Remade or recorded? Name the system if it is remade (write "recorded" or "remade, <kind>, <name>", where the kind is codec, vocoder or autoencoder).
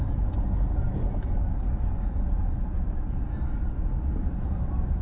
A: recorded